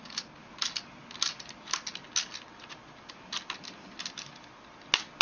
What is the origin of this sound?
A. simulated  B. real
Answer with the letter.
B